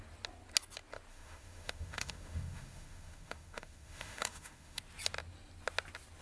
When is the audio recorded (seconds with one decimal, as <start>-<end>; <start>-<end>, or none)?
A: 0.0-1.1; 4.8-6.2